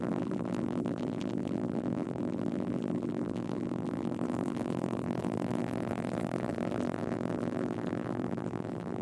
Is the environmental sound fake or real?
fake